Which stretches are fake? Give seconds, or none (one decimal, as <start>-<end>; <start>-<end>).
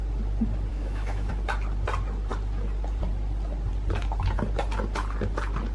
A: 0.7-1.3